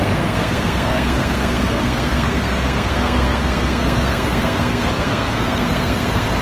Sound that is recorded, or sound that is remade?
remade